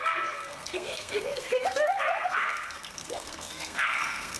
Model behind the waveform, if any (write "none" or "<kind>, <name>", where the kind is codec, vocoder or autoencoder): codec, SNAC